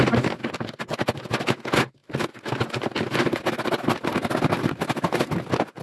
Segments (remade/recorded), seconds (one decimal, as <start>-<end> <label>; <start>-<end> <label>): 0.0-5.8 recorded